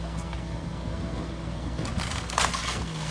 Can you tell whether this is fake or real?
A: fake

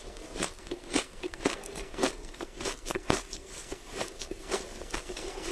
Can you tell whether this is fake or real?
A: fake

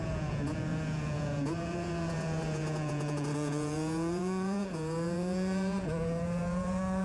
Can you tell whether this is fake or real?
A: fake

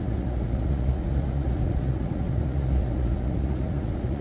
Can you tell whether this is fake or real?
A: fake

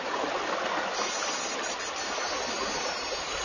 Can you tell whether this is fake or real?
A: real